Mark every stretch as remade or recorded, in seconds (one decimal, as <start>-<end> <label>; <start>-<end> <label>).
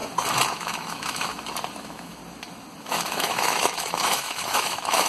0.0-0.5 recorded; 0.5-1.3 remade; 1.3-1.8 recorded; 1.8-2.2 remade; 2.2-2.8 recorded; 2.8-5.1 remade